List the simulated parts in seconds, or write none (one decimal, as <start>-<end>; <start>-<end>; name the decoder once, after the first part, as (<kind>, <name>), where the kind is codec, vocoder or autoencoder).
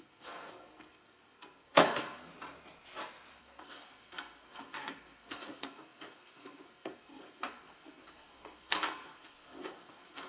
0.0-2.3 (codec, SNAC); 3.4-10.3